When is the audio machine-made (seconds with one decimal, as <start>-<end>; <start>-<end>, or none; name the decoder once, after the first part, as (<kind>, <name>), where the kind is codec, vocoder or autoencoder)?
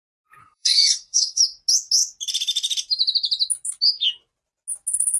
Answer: 0.4-1.4 (codec, SNAC)